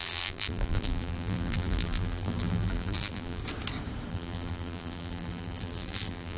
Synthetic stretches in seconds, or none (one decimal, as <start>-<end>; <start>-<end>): 0.0-3.4; 4.1-6.4